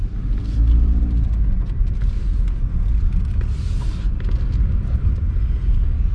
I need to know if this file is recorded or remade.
recorded